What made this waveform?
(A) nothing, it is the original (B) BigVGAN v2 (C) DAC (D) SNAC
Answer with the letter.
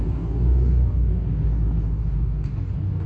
C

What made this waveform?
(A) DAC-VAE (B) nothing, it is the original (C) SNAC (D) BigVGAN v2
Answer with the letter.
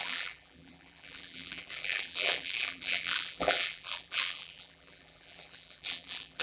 D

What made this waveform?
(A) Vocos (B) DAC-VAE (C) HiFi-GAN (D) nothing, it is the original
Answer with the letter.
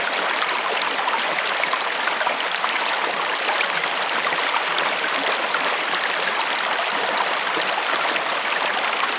D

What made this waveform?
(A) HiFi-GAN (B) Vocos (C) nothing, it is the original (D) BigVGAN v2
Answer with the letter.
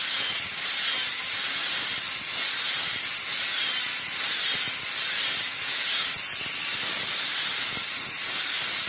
C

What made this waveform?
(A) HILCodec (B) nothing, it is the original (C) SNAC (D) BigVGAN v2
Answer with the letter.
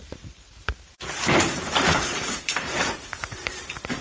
D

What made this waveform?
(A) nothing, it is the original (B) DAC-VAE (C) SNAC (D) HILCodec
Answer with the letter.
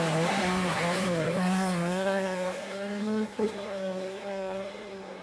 C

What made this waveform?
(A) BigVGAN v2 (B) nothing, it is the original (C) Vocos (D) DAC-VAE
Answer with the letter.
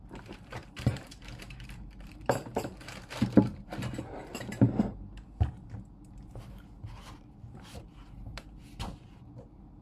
A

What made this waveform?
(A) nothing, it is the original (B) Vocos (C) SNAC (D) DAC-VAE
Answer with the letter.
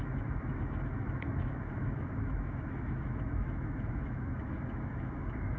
D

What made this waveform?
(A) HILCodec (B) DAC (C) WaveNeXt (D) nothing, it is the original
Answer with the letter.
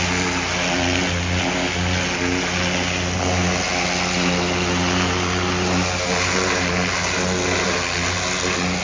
D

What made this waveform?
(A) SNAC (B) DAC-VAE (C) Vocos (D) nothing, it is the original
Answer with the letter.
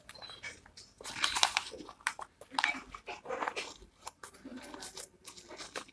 D